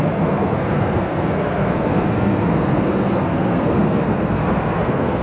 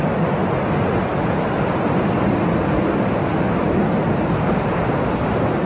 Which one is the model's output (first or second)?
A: first